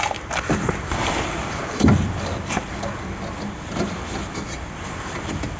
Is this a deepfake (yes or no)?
no